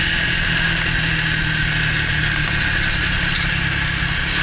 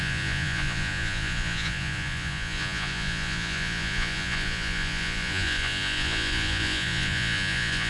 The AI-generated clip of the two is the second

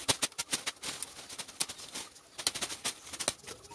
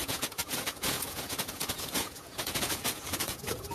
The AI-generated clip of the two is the second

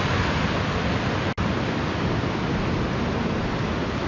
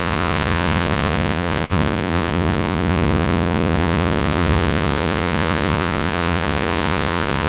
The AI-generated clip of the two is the second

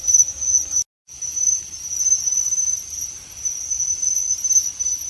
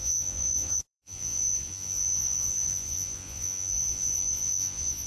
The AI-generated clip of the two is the second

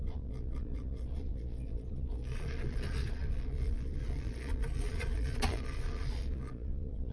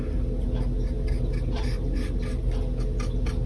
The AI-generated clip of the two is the first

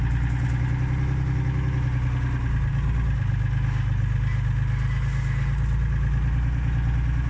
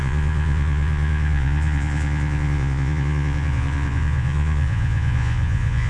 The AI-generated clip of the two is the second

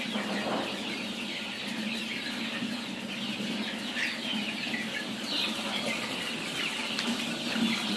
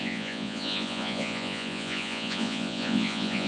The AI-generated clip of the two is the second